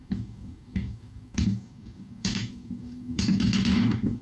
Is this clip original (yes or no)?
no